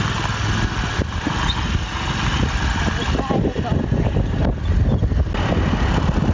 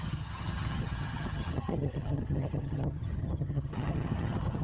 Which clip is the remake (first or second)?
second